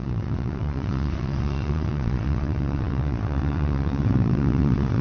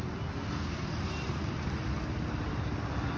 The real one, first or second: second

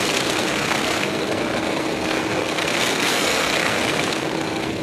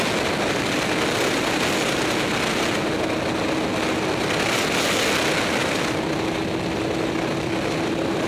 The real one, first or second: second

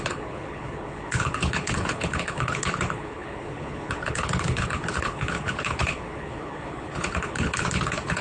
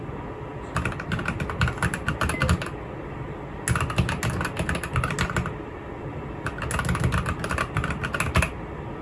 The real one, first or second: second